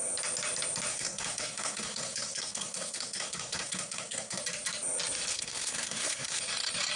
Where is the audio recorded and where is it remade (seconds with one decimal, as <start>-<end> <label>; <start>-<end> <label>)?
0.0-0.9 recorded; 0.9-4.4 remade; 4.4-5.3 recorded; 5.3-6.4 remade; 6.4-7.0 recorded